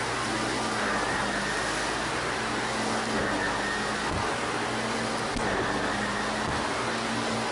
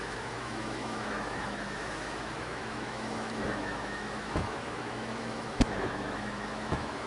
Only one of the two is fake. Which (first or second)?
second